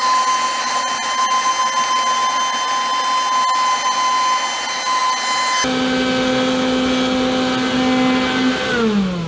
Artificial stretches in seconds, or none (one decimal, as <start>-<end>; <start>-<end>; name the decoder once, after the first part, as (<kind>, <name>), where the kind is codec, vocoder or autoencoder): 0.6-1.5 (vocoder, BigVGAN v2)